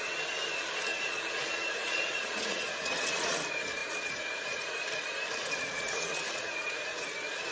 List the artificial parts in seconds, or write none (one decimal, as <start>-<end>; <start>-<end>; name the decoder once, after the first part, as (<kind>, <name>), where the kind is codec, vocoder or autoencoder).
0.9-3.4 (vocoder, Vocos); 3.8-5.0; 5.4-7.1

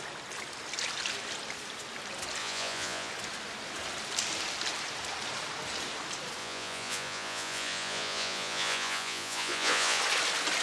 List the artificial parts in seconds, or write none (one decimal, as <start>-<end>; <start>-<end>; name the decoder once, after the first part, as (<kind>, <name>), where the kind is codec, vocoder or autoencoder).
2.4-3.1 (vocoder, Vocos); 6.4-10.0

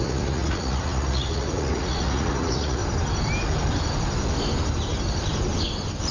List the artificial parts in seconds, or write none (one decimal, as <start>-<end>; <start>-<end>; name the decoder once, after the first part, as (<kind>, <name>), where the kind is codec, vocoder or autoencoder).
0.0-2.8 (vocoder, Vocos)

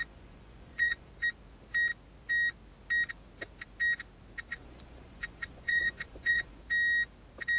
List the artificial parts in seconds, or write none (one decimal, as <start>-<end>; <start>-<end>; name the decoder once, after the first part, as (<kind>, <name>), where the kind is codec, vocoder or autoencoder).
0.0-1.1 (vocoder, Vocos); 4.5-6.6

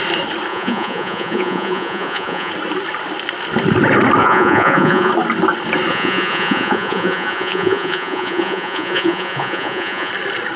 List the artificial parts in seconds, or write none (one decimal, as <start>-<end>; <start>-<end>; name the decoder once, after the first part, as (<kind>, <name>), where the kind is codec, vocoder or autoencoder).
0.5-2.5 (vocoder, Vocos); 4.2-5.1; 5.9-10.1

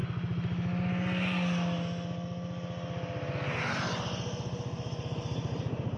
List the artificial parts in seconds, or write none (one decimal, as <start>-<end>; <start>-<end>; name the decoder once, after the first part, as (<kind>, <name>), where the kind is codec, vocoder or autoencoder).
none

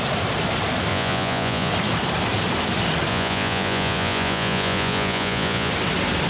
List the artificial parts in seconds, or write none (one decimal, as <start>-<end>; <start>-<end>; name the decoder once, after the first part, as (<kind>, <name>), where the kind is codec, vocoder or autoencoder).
0.9-1.7 (vocoder, Vocos); 3.1-5.7